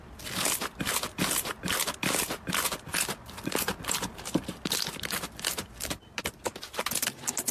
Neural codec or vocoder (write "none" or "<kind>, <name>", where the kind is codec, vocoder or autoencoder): none